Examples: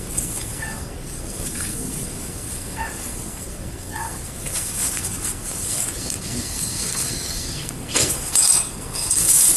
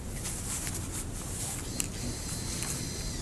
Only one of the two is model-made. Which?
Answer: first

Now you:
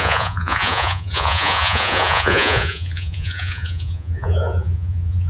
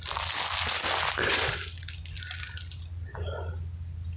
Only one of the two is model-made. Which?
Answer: first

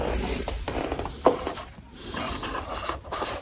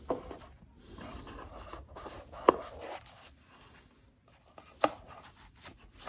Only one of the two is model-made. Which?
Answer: first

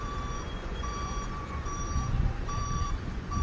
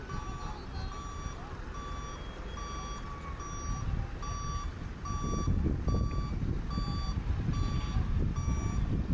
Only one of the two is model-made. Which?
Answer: first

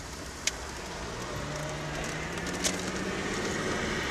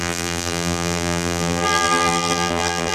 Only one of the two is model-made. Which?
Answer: second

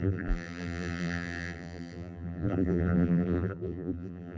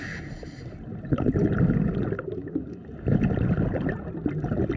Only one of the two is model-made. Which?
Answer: first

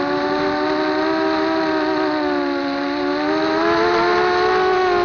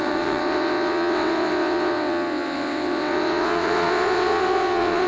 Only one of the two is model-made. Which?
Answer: second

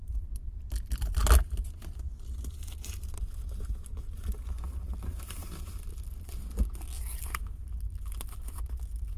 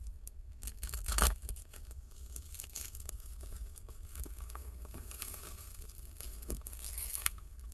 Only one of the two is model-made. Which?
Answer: second